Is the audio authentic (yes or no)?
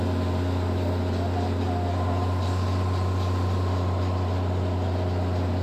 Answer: yes